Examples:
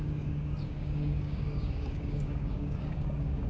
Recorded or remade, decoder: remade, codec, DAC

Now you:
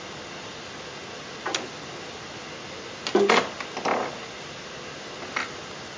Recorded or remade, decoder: recorded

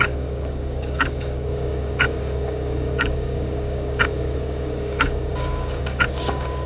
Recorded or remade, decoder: remade, codec, DAC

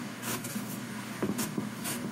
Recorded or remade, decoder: remade, codec, DAC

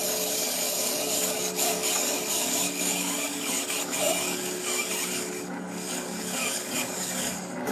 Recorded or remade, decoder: remade, codec, DAC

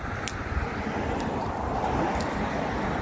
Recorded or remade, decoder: recorded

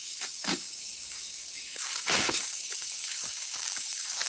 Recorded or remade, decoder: remade, codec, DAC